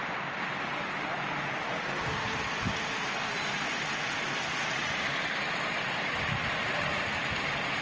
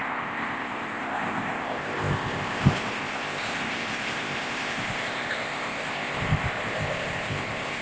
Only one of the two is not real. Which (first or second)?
second